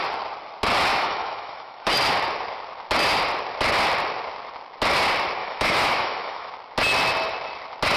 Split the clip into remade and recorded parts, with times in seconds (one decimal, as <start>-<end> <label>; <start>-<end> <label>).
0.0-0.9 recorded; 0.9-1.9 remade; 1.9-5.4 recorded; 5.4-6.5 remade; 6.5-8.0 recorded